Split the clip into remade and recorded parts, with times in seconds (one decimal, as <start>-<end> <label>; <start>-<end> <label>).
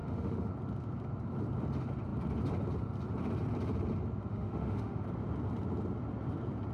0.0-0.5 remade; 0.5-4.3 recorded; 4.3-5.0 remade; 5.0-6.7 recorded